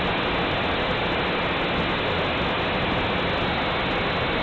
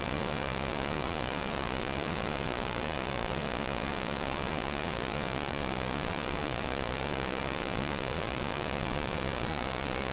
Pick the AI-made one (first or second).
second